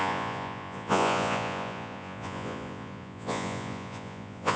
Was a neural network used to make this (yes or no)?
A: yes